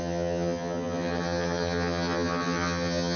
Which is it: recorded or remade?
remade